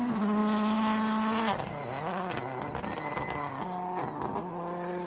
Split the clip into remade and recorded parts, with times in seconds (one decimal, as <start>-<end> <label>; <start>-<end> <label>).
0.0-5.1 recorded